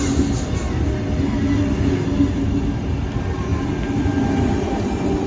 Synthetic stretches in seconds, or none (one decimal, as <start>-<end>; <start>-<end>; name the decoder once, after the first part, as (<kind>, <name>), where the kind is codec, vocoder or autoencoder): none

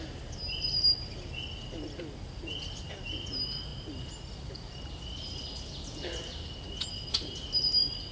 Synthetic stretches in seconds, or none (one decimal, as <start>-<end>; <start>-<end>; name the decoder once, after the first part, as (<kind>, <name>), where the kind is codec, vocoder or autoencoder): none